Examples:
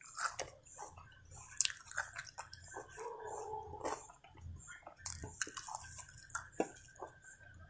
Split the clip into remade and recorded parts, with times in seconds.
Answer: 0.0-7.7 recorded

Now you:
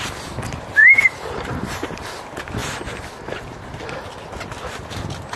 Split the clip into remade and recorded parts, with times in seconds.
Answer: 0.0-0.8 recorded; 0.8-2.2 remade; 2.2-5.4 recorded